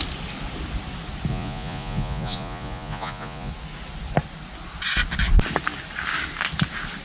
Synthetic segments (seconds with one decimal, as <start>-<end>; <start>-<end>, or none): 1.3-3.5